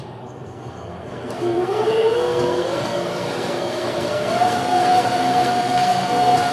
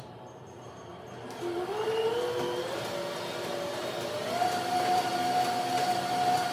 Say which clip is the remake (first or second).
first